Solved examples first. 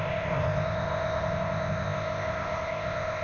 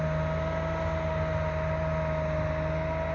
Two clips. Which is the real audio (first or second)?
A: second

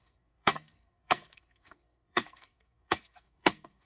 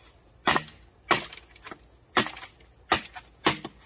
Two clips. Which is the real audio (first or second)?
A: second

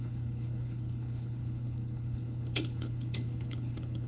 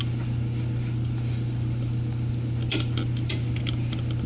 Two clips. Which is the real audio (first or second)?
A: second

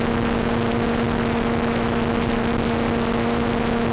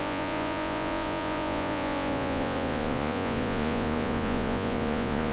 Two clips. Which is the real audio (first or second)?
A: first